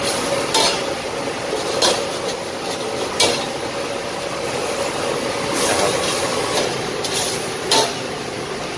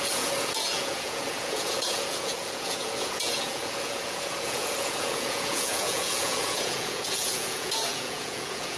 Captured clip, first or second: first